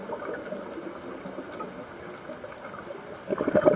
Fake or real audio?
real